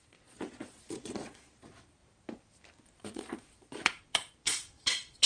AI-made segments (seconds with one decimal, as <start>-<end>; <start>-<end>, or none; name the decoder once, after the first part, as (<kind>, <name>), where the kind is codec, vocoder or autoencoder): 0.0-2.0 (vocoder, Vocos); 3.0-5.3